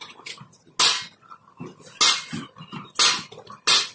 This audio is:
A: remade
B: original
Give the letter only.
B